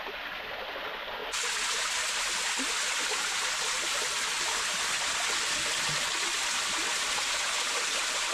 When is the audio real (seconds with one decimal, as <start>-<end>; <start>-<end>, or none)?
0.0-8.3